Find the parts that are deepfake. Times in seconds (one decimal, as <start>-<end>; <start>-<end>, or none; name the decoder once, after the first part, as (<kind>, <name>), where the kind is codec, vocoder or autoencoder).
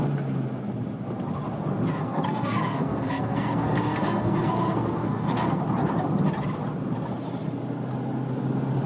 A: 1.9-5.6 (codec, SNAC)